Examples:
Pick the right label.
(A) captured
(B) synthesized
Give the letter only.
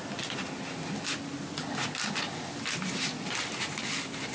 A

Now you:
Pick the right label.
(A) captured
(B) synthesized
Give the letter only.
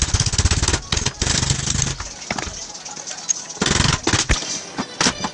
A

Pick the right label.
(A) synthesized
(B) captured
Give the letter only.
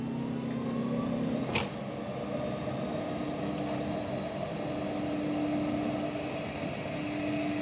B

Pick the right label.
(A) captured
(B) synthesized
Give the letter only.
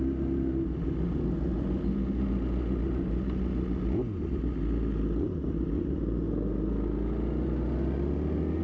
A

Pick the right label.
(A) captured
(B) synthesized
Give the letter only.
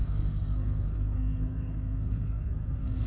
B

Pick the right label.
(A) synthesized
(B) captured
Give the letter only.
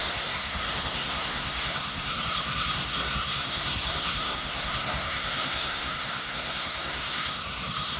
A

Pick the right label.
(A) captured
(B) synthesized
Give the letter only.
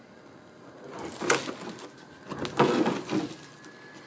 A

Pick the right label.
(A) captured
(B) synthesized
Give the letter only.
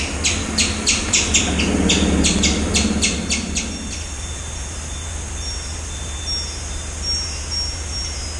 A